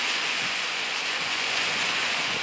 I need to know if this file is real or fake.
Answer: fake